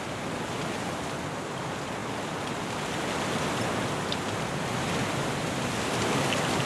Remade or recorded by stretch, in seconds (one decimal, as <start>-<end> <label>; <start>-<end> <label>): 0.0-6.7 recorded